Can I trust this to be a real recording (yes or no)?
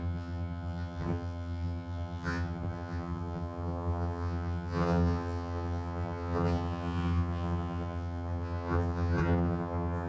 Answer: no